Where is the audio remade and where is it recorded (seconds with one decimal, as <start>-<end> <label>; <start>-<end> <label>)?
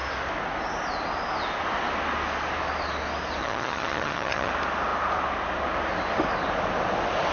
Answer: 0.0-3.4 recorded; 3.4-4.5 remade; 4.5-7.3 recorded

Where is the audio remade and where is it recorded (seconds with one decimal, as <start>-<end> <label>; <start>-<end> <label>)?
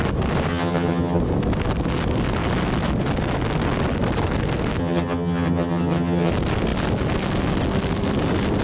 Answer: 0.0-0.5 recorded; 0.5-1.2 remade; 1.2-4.8 recorded; 4.8-6.3 remade; 6.3-8.6 recorded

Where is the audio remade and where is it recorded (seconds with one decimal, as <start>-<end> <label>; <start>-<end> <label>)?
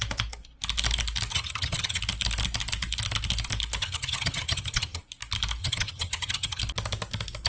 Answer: 0.0-1.3 recorded; 1.3-2.0 remade; 2.0-3.8 recorded; 3.8-5.0 remade; 5.0-5.6 recorded; 5.6-6.6 remade; 6.6-7.5 recorded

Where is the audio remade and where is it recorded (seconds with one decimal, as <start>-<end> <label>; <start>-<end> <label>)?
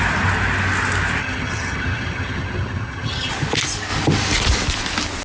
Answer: 0.0-1.2 recorded; 1.2-3.3 remade; 3.3-5.2 recorded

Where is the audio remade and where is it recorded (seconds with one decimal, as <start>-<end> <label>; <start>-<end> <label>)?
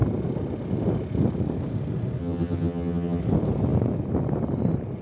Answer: 0.0-2.2 recorded; 2.2-3.2 remade; 3.2-5.0 recorded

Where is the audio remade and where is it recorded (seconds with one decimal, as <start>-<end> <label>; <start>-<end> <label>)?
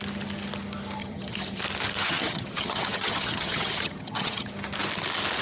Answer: 0.0-1.0 recorded; 1.0-1.6 remade; 1.6-2.0 recorded; 2.0-4.5 remade; 4.5-5.4 recorded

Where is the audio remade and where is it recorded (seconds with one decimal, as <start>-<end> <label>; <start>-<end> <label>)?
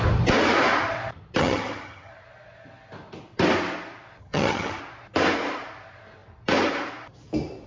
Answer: 0.0-1.4 recorded; 1.4-2.1 remade; 2.1-4.2 recorded; 4.2-4.8 remade; 4.8-7.7 recorded